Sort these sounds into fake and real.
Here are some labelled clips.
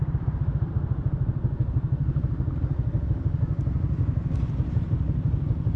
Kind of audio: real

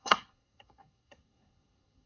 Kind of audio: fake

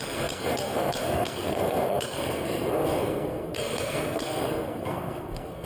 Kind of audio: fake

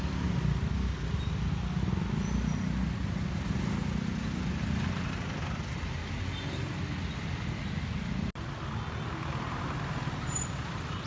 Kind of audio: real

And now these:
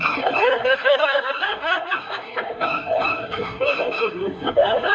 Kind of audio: fake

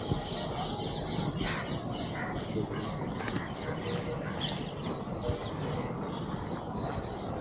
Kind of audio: real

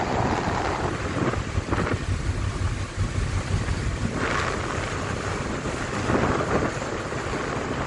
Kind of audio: real